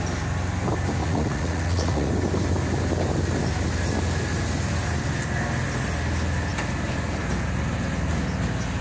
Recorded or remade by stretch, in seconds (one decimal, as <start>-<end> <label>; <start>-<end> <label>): 0.0-1.0 recorded; 1.0-2.1 remade; 2.1-8.8 recorded

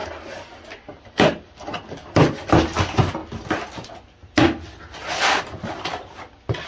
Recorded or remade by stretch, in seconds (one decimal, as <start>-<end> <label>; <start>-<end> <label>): 0.0-6.7 recorded

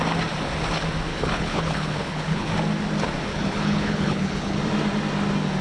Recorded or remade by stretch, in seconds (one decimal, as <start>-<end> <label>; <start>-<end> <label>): 0.0-1.1 recorded; 1.1-2.5 remade; 2.5-3.3 recorded; 3.3-4.6 remade; 4.6-5.6 recorded

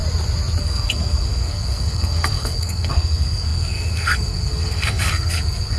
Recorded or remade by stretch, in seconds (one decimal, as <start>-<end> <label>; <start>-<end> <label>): 0.0-0.6 recorded; 0.6-5.8 remade

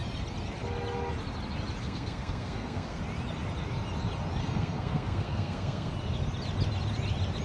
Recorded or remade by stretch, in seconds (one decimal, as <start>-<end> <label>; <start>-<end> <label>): 0.0-1.8 recorded; 1.8-3.0 remade; 3.0-4.4 recorded; 4.4-5.9 remade; 5.9-7.4 recorded

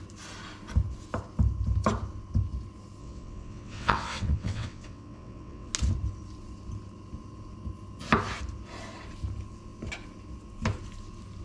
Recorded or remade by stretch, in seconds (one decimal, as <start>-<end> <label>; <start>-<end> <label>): 0.0-3.0 recorded; 3.0-5.7 remade; 5.7-11.4 recorded

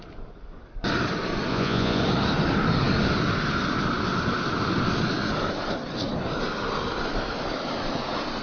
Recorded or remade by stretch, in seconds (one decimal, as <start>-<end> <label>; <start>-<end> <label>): 0.0-1.5 recorded; 1.5-2.0 remade; 2.0-8.4 recorded